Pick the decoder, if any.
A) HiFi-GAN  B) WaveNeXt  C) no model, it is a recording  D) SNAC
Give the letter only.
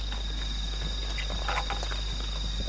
C